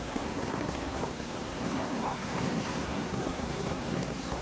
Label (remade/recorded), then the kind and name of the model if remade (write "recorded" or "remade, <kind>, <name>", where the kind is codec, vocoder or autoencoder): remade, codec, SNAC